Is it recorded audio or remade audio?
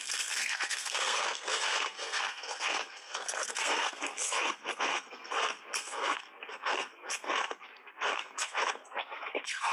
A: remade